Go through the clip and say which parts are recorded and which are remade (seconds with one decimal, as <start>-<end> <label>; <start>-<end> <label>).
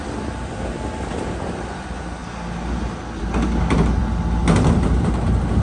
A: 0.0-5.6 recorded